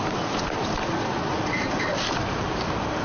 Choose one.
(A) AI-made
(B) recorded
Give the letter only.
A